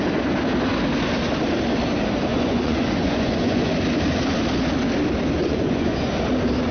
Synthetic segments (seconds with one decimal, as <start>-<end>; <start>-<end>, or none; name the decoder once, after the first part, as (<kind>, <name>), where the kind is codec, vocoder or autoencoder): 2.3-3.7 (vocoder, Vocos); 5.4-6.1